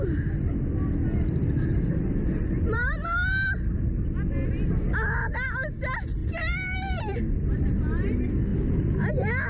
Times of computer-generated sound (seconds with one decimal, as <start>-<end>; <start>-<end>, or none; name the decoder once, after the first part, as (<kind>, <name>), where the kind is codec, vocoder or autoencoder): 1.7-4.1 (vocoder, BigVGAN v2); 6.2-7.2; 8.5-9.1